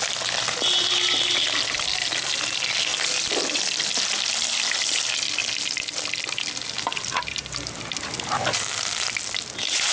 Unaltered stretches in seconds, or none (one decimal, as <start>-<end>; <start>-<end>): 0.0-9.9